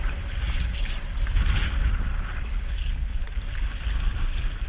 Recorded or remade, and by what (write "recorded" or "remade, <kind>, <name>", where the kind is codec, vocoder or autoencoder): recorded